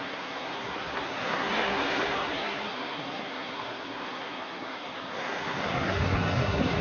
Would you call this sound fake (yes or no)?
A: yes